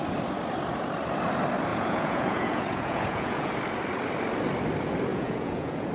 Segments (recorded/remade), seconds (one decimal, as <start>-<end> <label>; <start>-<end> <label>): 0.0-1.7 recorded; 1.7-3.5 remade; 3.5-5.1 recorded; 5.1-5.9 remade